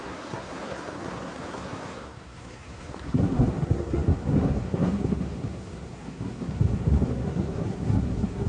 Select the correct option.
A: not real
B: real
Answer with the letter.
A